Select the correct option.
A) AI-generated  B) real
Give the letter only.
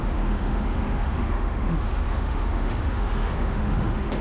A